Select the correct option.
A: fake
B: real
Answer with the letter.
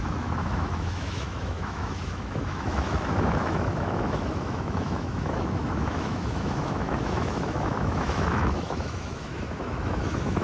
A